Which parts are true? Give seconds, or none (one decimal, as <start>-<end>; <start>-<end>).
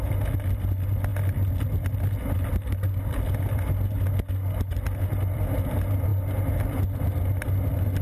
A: 0.0-8.0